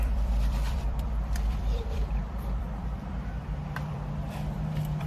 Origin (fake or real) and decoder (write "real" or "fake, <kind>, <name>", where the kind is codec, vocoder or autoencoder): fake, vocoder, BigVGAN v2